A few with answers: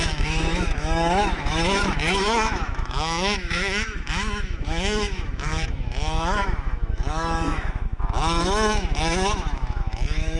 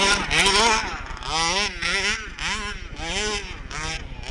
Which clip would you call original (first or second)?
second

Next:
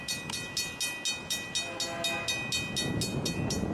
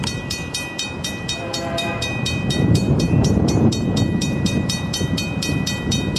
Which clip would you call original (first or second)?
first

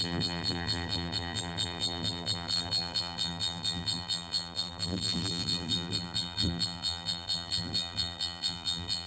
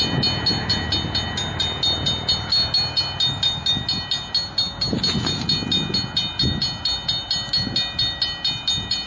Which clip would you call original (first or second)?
second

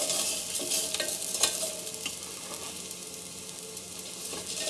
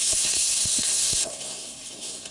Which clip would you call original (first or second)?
first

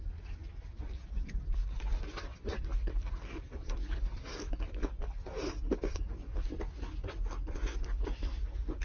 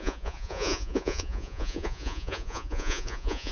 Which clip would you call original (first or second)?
first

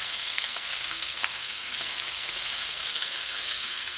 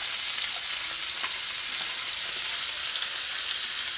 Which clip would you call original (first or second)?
second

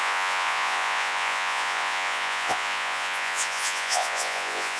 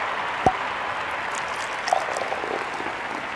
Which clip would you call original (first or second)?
second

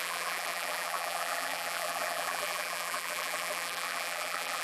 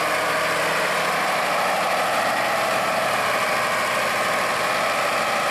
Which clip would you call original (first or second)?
second